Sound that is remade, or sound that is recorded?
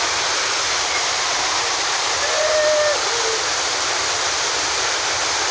recorded